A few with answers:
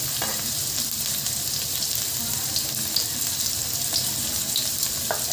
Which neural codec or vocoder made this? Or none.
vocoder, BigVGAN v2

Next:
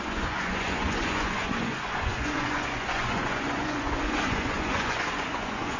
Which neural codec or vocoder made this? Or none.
vocoder, Vocos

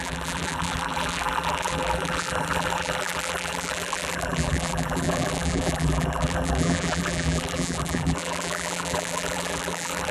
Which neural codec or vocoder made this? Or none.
vocoder, BigVGAN v2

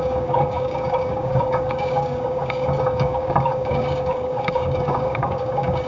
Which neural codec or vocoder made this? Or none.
codec, DAC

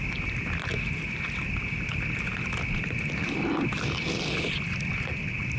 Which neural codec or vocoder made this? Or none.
none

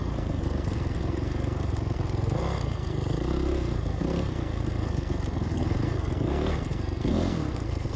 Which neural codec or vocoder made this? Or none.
codec, SNAC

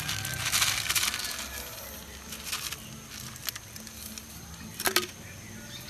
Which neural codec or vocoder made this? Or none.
none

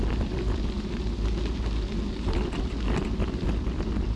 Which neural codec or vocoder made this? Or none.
none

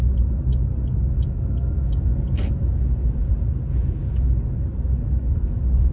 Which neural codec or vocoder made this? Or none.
none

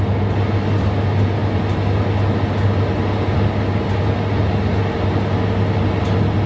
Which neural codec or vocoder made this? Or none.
none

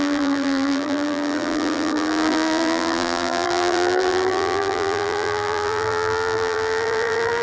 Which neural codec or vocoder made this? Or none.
vocoder, BigVGAN v2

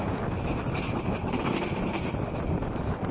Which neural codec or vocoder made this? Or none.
vocoder, BigVGAN v2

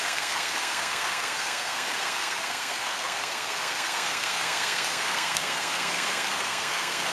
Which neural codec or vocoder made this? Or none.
codec, SNAC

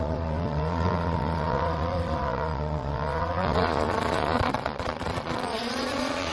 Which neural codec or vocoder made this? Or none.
vocoder, Vocos